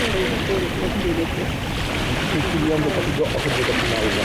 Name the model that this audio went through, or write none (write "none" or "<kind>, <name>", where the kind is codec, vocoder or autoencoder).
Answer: none